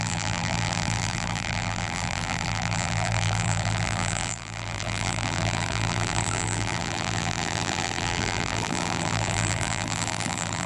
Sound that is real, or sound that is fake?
fake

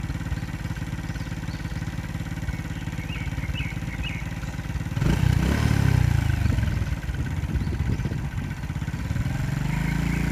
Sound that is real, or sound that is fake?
real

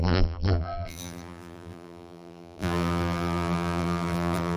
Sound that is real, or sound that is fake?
fake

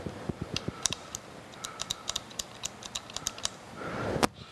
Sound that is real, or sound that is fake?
fake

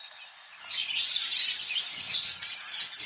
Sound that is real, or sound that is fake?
real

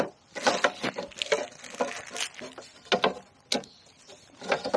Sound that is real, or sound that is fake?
real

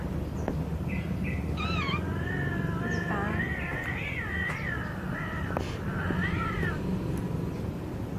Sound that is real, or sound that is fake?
real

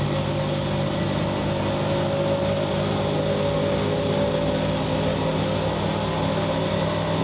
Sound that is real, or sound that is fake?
real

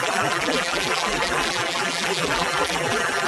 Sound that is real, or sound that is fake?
fake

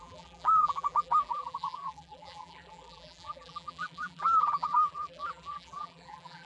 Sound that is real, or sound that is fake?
fake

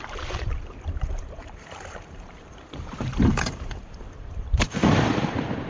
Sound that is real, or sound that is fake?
fake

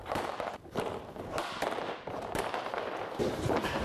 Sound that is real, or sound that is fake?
fake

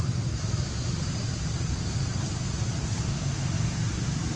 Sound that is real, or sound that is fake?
real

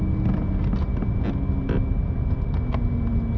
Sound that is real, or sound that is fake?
real